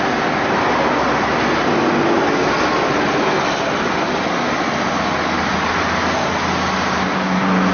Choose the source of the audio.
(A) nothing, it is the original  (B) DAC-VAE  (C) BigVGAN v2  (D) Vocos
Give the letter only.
A